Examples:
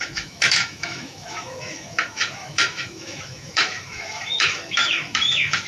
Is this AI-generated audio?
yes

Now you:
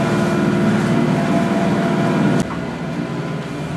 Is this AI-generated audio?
no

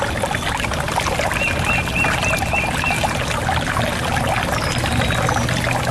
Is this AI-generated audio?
no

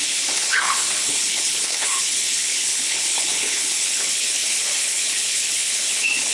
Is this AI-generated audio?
yes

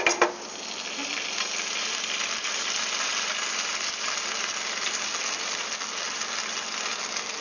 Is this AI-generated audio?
no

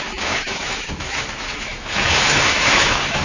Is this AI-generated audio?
yes